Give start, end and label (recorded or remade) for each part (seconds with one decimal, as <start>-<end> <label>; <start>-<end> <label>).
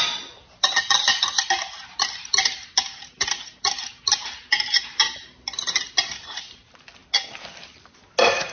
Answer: 0.0-8.5 recorded